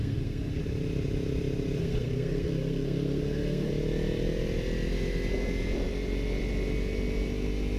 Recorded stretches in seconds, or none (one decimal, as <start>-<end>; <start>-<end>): 0.6-1.8; 3.7-7.8